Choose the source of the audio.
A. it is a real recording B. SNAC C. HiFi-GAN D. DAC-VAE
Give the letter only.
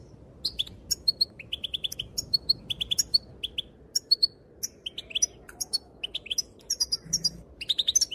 A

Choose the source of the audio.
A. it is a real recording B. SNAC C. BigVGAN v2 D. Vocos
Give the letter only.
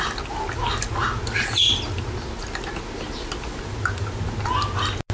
A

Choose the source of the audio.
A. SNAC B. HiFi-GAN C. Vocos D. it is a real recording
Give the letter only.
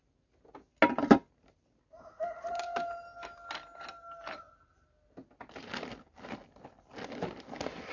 D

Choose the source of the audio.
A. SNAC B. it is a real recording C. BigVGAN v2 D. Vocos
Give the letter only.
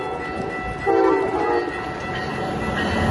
B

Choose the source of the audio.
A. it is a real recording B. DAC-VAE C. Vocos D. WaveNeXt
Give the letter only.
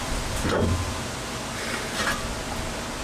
A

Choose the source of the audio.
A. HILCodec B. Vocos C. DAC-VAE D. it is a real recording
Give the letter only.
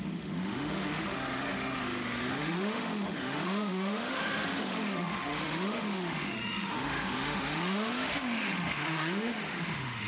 C